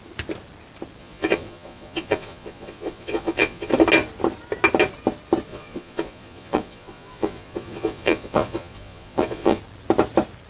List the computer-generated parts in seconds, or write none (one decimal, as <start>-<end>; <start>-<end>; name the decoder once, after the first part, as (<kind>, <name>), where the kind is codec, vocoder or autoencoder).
1.0-3.7 (vocoder, Vocos); 5.5-9.6